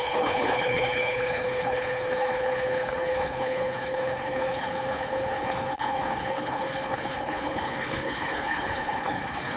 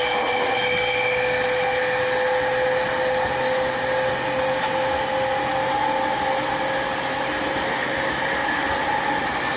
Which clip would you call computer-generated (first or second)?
first